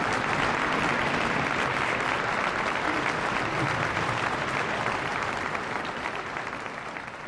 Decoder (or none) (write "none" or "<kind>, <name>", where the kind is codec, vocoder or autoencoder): vocoder, BigVGAN v2